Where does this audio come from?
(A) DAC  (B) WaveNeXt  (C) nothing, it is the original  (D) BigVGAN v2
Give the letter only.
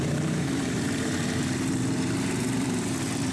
D